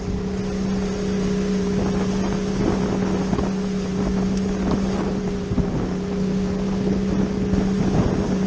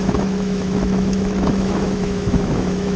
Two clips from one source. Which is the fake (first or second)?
second